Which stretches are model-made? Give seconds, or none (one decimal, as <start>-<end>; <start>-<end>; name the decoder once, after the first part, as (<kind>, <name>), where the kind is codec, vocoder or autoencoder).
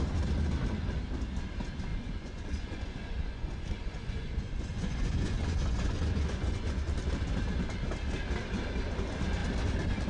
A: 1.9-6.9 (vocoder, Vocos)